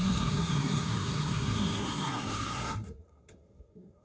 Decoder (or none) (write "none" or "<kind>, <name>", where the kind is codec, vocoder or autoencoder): codec, SNAC